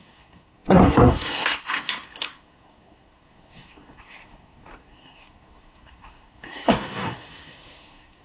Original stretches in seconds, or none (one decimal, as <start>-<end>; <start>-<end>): none